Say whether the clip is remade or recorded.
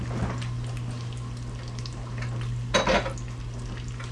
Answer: recorded